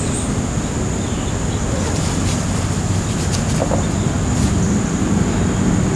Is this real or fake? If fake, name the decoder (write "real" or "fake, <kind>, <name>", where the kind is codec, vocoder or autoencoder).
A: real